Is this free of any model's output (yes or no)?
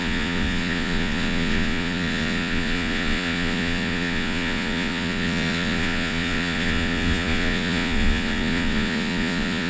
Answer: no